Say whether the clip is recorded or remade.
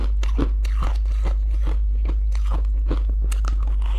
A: recorded